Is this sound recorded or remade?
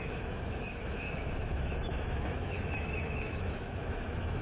remade